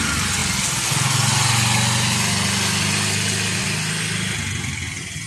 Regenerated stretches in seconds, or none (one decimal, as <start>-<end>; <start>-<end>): none